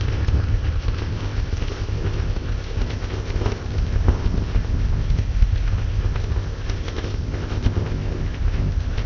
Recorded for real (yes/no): no